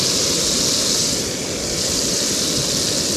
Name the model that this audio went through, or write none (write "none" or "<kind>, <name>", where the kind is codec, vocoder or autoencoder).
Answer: none